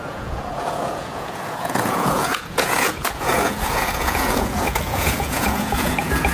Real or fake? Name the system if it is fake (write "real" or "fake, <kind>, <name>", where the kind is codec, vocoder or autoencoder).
fake, vocoder, Vocos